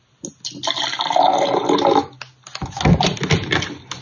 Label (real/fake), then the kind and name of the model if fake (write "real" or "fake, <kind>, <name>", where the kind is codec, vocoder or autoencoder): real